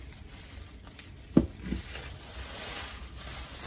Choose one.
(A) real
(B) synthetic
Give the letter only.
A